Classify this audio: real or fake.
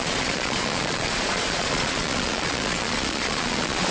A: fake